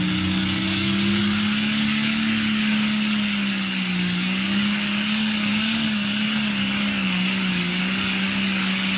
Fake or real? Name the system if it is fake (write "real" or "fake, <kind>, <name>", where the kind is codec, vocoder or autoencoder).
fake, codec, DAC